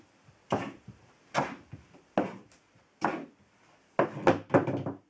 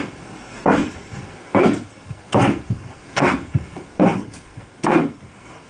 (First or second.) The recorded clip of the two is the first